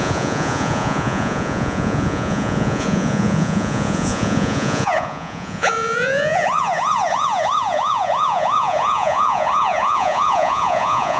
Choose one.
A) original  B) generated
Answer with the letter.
B